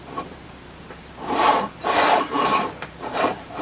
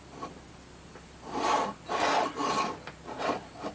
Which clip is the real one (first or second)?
second